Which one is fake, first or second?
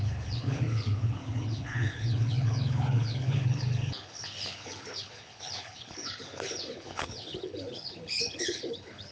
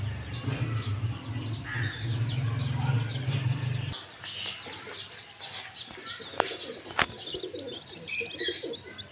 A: first